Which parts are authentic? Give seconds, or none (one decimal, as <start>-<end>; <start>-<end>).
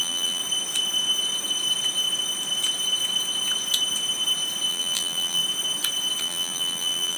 0.4-4.7; 5.4-6.2